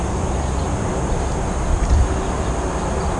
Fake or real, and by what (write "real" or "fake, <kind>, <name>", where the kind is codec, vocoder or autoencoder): real